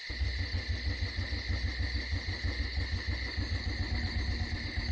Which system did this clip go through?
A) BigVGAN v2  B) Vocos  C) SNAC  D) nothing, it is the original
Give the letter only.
D